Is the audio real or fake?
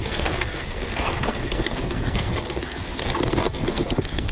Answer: fake